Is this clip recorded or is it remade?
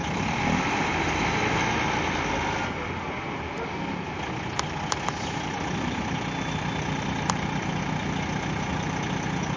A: recorded